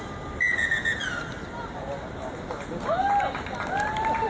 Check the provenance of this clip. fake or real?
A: real